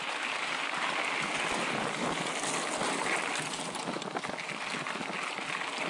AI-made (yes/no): no